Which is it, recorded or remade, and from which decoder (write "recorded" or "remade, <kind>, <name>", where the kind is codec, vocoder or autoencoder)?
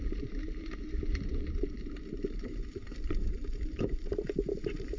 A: remade, vocoder, BigVGAN v2